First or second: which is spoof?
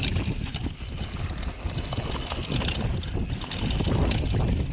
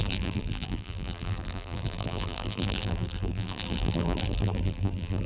second